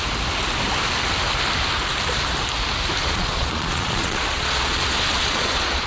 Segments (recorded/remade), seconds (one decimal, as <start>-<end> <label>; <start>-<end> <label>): 0.0-3.0 recorded; 3.0-5.9 remade